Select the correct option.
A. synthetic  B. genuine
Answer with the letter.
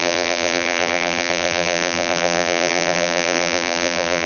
A